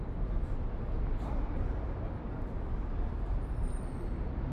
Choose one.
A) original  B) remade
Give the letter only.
B